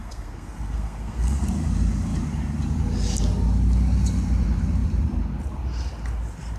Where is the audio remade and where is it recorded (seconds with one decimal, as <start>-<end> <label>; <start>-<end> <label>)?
0.0-1.4 remade; 1.4-6.6 recorded